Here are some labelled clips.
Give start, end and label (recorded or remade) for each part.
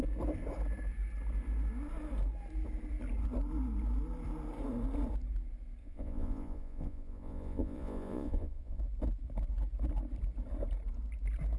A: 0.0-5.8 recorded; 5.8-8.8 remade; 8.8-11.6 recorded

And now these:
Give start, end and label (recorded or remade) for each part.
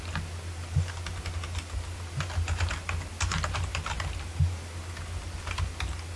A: 0.0-6.2 recorded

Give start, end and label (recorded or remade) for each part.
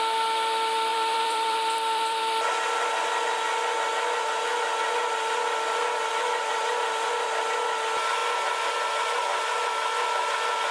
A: 0.0-0.9 recorded; 0.9-2.2 remade; 2.2-6.1 recorded; 6.1-7.1 remade; 7.1-10.7 recorded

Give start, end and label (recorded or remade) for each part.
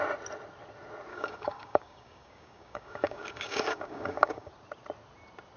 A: 0.0-1.1 recorded; 1.1-4.5 remade; 4.5-5.6 recorded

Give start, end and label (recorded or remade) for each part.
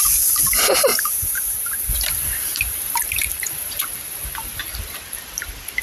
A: 0.0-0.9 recorded; 0.9-1.9 remade; 1.9-2.5 recorded; 2.5-4.6 remade; 4.6-5.8 recorded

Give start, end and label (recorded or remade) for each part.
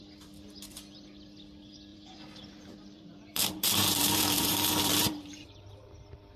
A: 0.0-1.9 recorded; 1.9-5.7 remade; 5.7-6.4 recorded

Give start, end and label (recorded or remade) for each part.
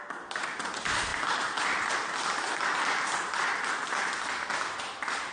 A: 0.0-5.3 recorded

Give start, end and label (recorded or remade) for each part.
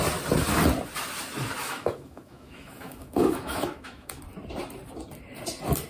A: 0.0-1.6 recorded; 1.6-4.2 remade; 4.2-5.9 recorded